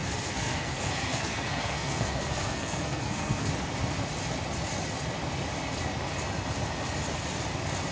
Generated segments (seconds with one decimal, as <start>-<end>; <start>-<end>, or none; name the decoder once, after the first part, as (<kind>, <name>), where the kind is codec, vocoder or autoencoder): 0.0-3.5 (codec, SNAC)